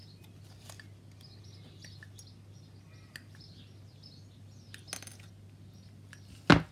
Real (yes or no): yes